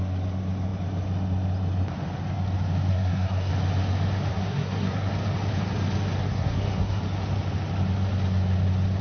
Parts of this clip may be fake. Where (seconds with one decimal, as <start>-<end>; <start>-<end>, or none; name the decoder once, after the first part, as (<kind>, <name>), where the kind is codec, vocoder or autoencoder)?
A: 2.9-3.5 (codec, SNAC); 4.3-5.1; 6.2-7.0